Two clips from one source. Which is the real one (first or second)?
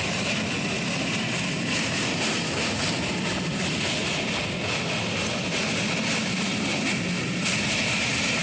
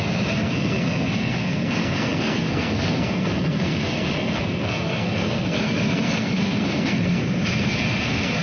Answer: first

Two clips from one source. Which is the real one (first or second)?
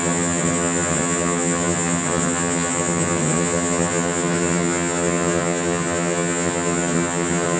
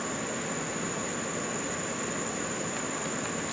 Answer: second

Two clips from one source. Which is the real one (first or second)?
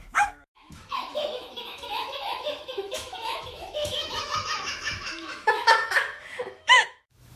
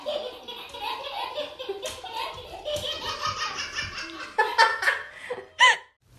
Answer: second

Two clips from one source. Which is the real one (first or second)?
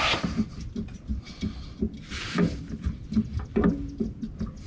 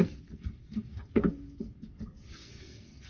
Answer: first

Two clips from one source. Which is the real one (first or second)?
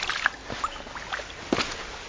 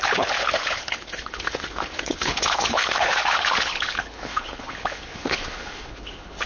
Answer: first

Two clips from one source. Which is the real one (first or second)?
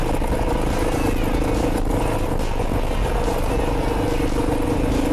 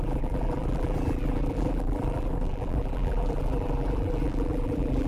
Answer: first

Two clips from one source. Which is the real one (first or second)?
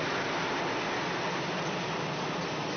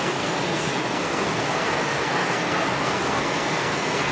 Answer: first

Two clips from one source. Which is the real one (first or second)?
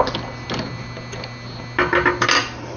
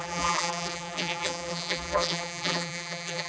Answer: first